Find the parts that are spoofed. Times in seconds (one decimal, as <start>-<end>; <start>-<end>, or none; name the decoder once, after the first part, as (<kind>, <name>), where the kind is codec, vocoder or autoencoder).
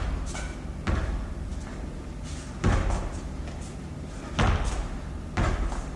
none